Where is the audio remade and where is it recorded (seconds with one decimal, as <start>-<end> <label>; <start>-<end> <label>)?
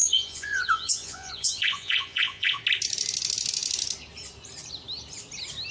0.0-2.6 remade; 2.6-5.7 recorded